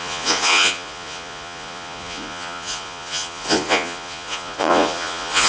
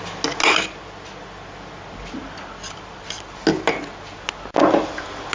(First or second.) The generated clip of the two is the first